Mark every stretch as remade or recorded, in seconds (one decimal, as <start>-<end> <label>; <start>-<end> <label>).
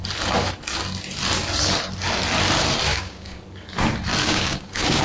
0.0-2.9 recorded; 2.9-3.4 remade; 3.4-4.2 recorded; 4.2-5.0 remade